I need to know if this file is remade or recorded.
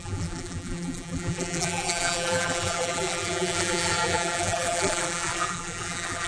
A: remade